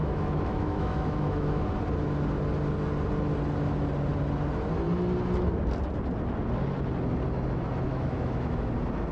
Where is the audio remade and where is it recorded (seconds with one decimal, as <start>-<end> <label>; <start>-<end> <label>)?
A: 0.0-1.7 remade; 1.7-7.9 recorded; 7.9-8.7 remade; 8.7-9.1 recorded